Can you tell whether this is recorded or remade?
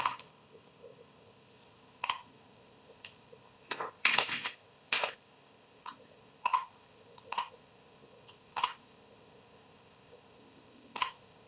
remade